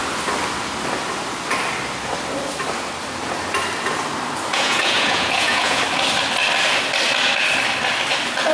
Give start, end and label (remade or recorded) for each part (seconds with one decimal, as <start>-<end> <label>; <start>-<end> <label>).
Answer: 0.0-4.5 recorded; 4.5-5.8 remade; 5.8-8.5 recorded